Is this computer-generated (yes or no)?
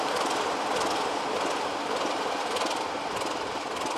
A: no